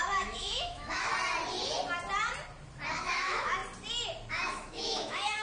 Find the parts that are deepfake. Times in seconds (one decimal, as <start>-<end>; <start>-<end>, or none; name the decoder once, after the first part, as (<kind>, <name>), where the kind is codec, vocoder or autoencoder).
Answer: 0.0-1.1 (autoencoder, DAC-VAE); 2.9-3.6; 4.3-5.4